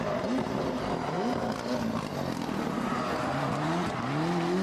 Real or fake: real